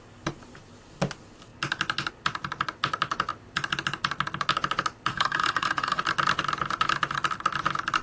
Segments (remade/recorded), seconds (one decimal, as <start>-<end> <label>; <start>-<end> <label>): 0.0-5.1 recorded; 5.1-6.0 remade; 6.0-8.0 recorded